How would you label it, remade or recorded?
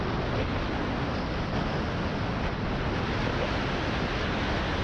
recorded